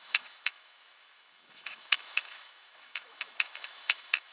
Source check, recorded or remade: remade